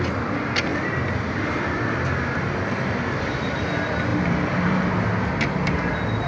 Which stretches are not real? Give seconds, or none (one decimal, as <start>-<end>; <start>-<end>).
0.7-3.6; 4.1-4.9